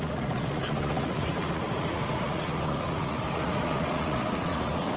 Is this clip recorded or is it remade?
remade